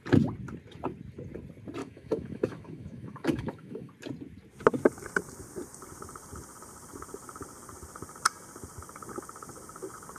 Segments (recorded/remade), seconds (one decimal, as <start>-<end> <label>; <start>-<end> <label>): 0.0-1.8 recorded; 1.8-3.9 remade; 3.9-10.2 recorded